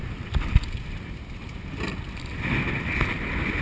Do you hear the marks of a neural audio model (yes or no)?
no